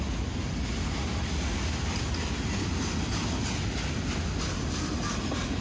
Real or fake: real